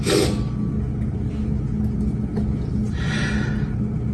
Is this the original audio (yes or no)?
yes